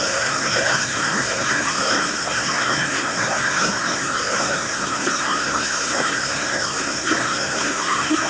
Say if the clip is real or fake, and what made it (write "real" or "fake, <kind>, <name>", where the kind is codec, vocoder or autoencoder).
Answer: fake, codec, SNAC